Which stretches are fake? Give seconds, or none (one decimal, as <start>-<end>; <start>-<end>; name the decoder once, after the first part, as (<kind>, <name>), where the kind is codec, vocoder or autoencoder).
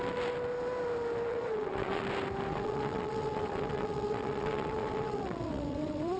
1.3-2.0 (vocoder, WaveNeXt); 2.5-6.2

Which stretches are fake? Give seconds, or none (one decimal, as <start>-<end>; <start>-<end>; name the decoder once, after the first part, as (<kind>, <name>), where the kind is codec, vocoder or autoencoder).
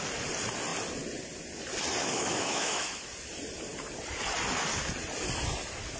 2.0-3.0 (autoencoder, DAC-VAE)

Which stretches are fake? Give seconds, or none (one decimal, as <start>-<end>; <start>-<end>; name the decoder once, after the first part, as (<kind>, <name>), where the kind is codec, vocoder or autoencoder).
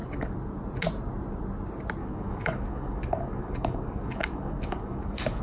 2.0-5.4 (codec, DAC)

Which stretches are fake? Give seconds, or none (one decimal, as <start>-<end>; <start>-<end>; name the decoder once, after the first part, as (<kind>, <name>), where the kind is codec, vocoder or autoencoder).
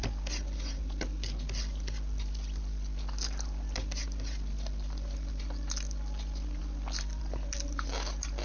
none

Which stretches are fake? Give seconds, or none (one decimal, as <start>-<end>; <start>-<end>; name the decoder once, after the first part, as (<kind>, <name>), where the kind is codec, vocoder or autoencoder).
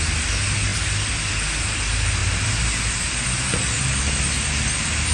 0.7-1.3 (vocoder, BigVGAN v2); 2.2-4.5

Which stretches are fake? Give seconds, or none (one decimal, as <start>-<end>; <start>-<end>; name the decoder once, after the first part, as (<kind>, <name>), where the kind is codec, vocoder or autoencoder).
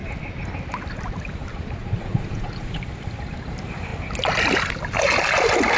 1.8-2.8 (vocoder, Vocos)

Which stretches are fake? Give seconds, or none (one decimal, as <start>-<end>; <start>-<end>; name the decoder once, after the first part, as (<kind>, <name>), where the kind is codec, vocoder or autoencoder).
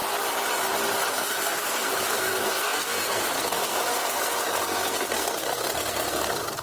1.1-6.6 (codec, SNAC)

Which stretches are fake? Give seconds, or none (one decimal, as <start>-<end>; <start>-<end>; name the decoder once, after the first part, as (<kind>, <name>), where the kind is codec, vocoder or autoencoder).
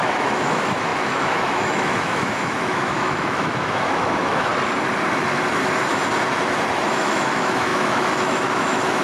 0.0-4.5 (autoencoder, DAC-VAE); 6.9-9.0